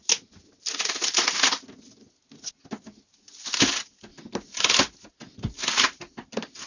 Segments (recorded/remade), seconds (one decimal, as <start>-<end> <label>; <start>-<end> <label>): 0.0-4.1 recorded; 4.1-4.6 remade; 4.6-6.7 recorded